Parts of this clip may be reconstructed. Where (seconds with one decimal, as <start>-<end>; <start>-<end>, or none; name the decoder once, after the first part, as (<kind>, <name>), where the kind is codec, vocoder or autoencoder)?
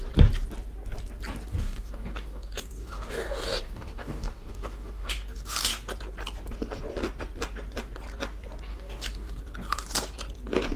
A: 1.5-5.7 (codec, DAC); 8.7-9.4